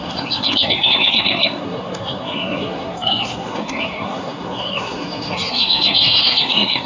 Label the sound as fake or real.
fake